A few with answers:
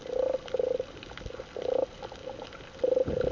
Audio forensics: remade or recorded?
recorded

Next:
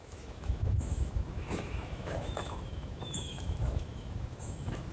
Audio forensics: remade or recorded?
remade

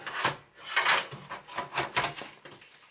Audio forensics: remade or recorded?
recorded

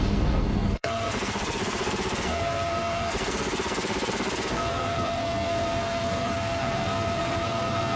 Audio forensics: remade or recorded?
remade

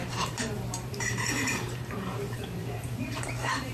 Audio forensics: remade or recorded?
remade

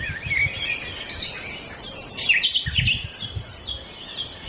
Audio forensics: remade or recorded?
recorded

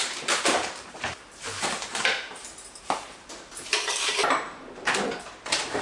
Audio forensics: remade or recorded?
remade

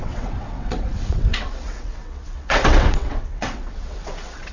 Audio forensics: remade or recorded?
remade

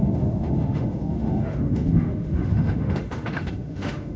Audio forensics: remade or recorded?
remade